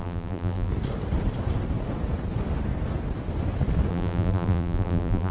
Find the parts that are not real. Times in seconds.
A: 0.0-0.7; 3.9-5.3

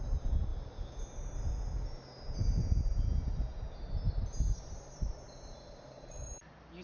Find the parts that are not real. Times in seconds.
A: 0.0-0.5; 4.6-6.8

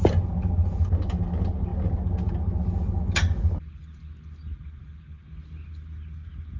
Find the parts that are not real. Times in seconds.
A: none

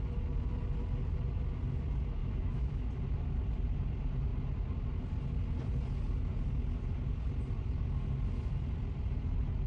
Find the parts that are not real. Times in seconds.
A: 2.2-2.9

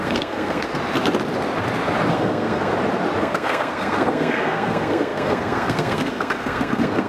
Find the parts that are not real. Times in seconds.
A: 0.0-0.7; 2.1-2.7; 3.2-7.1

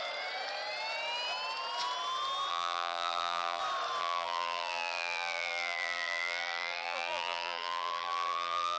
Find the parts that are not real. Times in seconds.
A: 2.5-3.6; 4.0-8.8

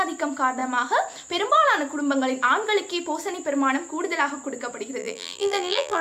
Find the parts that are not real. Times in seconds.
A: 5.0-6.0